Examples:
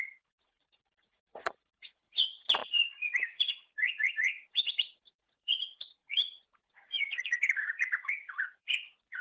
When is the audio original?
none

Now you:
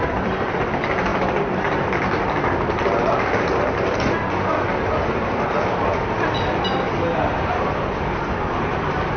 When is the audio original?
0.0-9.2

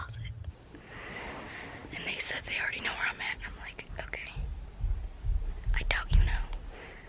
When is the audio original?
0.5-7.1

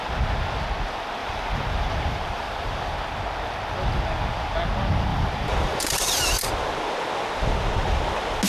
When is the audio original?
0.0-1.2; 2.9-5.1; 6.5-8.5